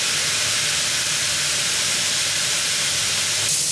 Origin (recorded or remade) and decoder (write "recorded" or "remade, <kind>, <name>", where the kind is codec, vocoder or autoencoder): recorded